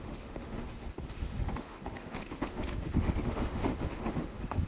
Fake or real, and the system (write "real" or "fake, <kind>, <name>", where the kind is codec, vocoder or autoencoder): fake, autoencoder, DAC-VAE